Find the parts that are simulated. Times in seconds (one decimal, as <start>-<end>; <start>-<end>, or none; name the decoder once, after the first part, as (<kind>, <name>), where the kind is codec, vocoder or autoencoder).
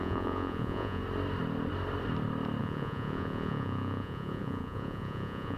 0.0-1.0 (vocoder, Vocos); 2.6-5.6